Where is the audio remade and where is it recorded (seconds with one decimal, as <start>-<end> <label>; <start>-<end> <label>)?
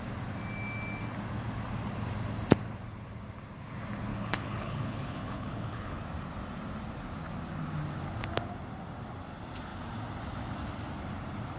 0.0-4.1 recorded; 4.1-6.0 remade; 6.0-11.6 recorded